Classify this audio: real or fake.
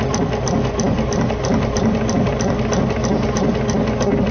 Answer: real